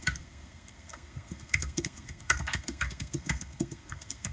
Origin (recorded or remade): remade